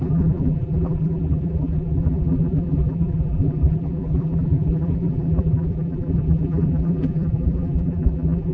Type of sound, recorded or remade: remade